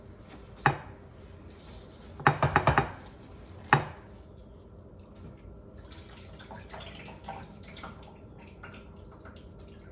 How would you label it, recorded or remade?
recorded